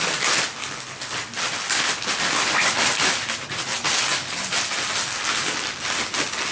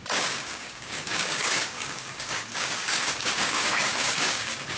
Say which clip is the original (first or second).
first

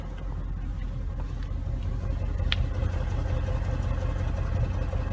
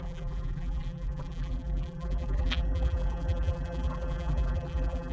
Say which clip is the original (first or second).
first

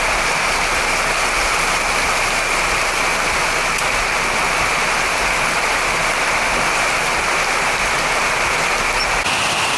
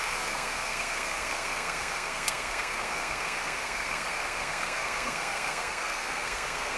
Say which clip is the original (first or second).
first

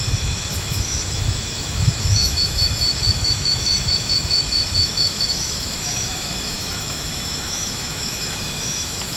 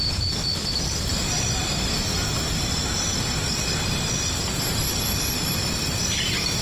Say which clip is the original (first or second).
second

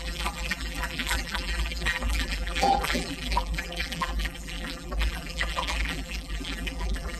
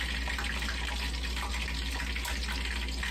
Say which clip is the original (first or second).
second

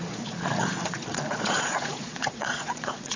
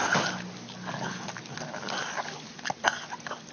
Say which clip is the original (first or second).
second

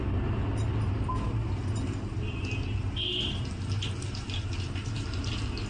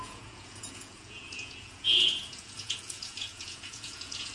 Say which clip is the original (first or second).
first